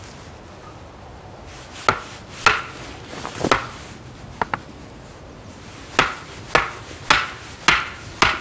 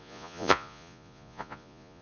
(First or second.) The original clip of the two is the first